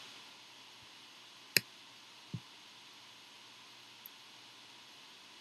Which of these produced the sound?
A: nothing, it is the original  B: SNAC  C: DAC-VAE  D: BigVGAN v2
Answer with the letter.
A